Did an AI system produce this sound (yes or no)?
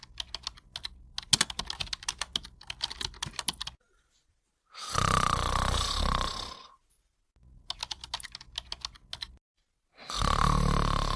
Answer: no